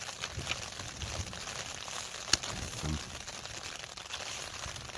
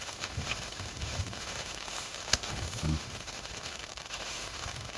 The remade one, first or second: second